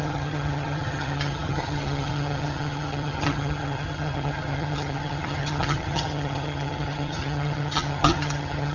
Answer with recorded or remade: remade